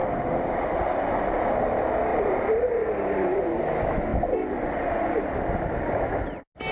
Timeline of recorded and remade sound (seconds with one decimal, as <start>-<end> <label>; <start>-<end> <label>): 0.0-2.1 recorded; 2.1-2.7 remade; 2.7-6.7 recorded